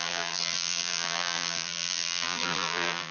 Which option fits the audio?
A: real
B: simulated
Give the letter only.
B